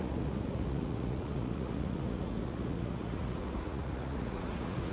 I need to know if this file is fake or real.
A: fake